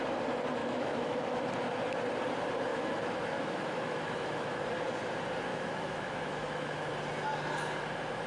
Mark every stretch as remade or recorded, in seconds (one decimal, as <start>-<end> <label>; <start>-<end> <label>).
0.0-0.6 recorded; 0.6-1.5 remade; 1.5-2.7 recorded; 2.7-4.6 remade; 4.6-5.5 recorded; 5.5-6.9 remade; 6.9-8.3 recorded